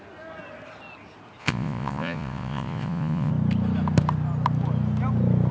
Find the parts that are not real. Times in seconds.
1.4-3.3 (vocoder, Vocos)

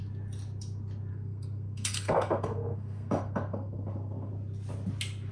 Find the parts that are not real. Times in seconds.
1.1-4.3 (codec, SNAC)

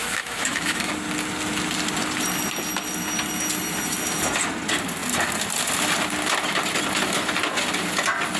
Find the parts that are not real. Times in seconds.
0.0-0.9 (autoencoder, DAC-VAE)